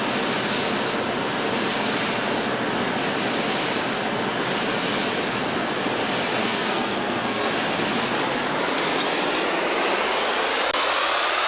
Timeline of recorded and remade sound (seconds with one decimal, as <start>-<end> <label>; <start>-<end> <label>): 0.0-6.4 recorded; 6.4-7.5 remade; 7.5-11.5 recorded